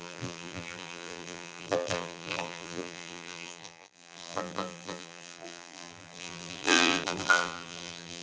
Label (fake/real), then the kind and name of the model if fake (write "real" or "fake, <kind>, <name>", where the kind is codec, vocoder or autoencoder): fake, vocoder, BigVGAN v2